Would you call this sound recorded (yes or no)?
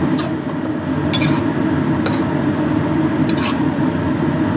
yes